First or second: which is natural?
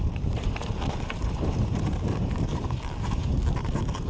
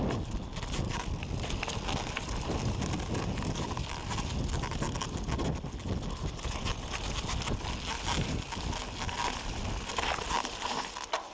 second